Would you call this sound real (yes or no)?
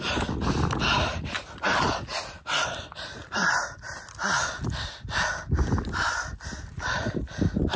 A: yes